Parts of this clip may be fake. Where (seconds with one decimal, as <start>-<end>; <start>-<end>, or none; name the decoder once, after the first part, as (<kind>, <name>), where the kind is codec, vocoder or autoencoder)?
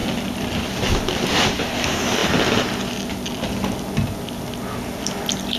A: none